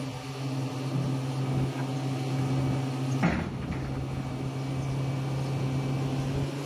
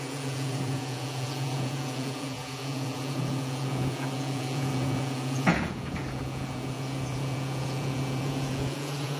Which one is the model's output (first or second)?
second